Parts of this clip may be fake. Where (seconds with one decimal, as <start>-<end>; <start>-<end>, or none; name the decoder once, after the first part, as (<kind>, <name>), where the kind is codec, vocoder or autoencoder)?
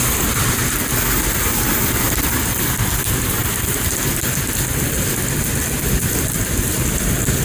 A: none